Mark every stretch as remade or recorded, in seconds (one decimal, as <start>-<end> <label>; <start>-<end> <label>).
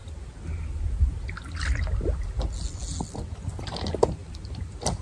0.0-5.0 recorded